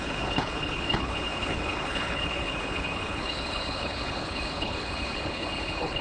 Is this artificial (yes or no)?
yes